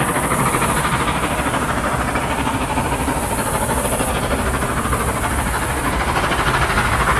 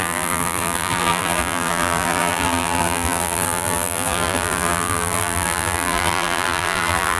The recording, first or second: first